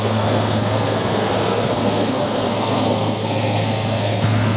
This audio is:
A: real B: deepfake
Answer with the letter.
B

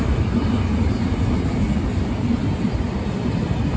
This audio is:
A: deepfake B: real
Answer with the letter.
B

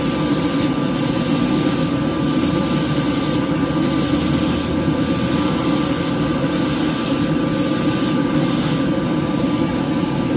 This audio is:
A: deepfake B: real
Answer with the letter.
B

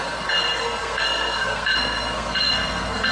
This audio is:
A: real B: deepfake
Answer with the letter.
B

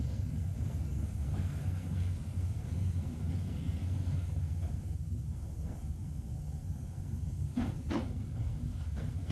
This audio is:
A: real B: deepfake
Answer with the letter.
B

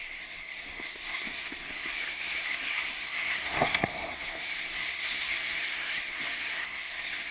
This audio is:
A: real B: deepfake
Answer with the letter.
B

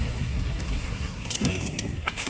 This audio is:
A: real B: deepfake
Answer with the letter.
B